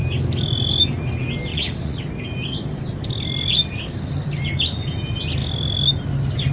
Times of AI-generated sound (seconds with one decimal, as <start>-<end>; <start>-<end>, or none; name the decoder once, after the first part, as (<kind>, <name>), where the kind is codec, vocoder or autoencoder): 1.5-2.0 (vocoder, Vocos)